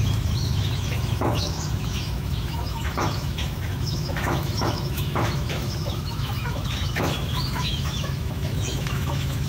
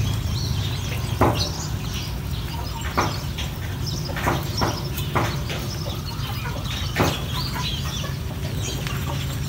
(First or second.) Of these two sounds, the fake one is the first